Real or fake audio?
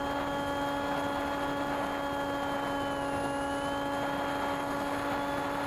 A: real